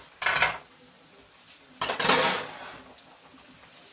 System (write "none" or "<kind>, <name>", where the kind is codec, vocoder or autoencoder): none